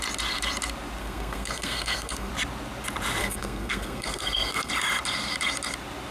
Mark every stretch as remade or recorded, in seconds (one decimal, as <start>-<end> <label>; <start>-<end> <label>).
0.0-1.0 recorded; 1.0-2.3 remade; 2.3-3.2 recorded; 3.2-4.7 remade; 4.7-6.1 recorded